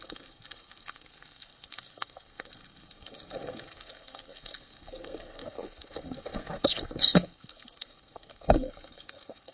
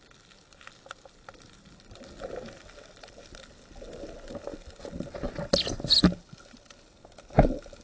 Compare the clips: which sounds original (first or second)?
second